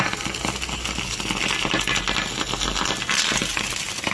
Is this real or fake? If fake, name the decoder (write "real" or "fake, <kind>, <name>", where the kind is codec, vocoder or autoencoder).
real